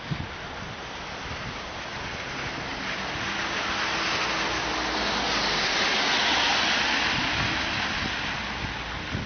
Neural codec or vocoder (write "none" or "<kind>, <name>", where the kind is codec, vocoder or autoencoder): none